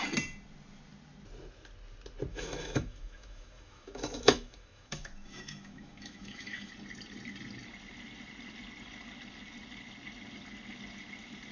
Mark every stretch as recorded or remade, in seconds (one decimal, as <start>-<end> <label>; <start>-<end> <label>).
0.0-2.3 recorded; 2.3-6.7 remade; 6.7-11.5 recorded